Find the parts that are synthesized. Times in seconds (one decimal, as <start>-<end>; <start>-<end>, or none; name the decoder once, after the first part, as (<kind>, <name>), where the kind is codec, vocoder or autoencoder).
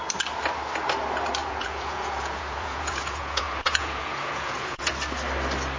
1.4-4.9 (vocoder, Vocos)